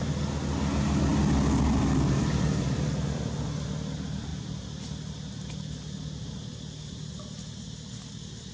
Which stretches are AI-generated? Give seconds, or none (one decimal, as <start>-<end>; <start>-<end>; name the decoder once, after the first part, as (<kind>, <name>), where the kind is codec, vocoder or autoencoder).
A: none